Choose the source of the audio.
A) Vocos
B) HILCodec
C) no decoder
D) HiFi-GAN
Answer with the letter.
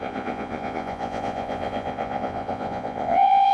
A